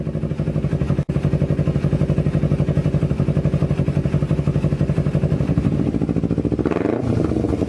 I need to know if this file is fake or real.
real